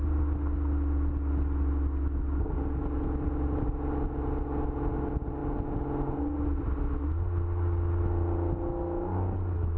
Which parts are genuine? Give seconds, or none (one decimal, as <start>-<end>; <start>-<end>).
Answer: 0.0-9.8